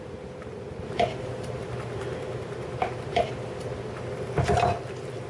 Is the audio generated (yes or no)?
no